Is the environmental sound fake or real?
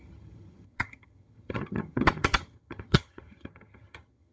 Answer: fake